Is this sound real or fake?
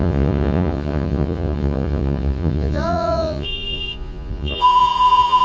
fake